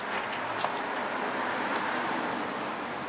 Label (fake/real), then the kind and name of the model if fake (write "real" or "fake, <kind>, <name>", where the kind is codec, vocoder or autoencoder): real